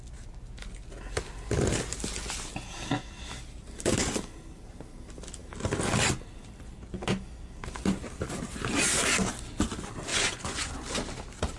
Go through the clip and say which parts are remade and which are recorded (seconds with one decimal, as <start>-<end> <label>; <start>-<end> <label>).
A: 0.0-10.1 recorded; 10.1-10.7 remade; 10.7-11.6 recorded